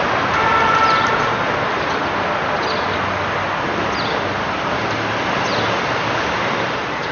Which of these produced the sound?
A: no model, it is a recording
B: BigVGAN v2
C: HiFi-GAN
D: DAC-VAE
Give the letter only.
A